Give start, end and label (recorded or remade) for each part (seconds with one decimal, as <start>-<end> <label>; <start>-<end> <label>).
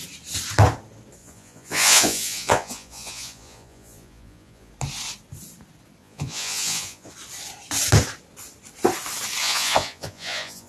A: 0.0-1.2 recorded; 1.2-4.7 remade; 4.7-6.0 recorded; 6.0-7.1 remade; 7.1-9.4 recorded; 9.4-10.7 remade